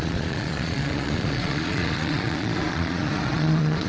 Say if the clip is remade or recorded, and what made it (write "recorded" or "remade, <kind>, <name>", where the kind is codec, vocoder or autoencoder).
remade, vocoder, Vocos